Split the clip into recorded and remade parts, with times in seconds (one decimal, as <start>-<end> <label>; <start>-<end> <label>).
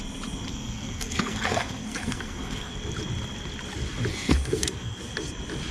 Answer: 0.0-0.5 recorded; 0.5-2.7 remade; 2.7-4.1 recorded; 4.1-5.0 remade; 5.0-5.7 recorded